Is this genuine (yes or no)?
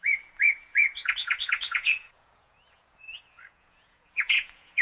no